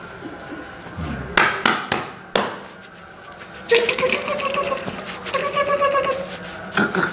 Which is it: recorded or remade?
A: recorded